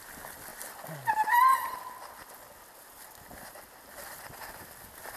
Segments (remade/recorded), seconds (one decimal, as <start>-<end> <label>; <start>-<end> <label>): 0.0-5.2 recorded